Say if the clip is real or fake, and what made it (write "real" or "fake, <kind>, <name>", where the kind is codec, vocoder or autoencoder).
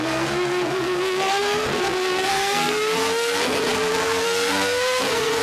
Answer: fake, codec, SNAC